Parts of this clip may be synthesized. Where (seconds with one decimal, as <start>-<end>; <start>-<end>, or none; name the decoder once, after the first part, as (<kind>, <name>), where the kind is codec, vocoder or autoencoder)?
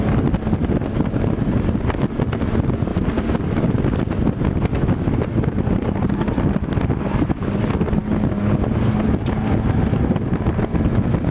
none